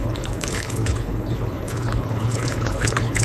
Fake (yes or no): yes